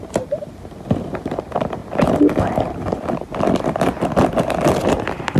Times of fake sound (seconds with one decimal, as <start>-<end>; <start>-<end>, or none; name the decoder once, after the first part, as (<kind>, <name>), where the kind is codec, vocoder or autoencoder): none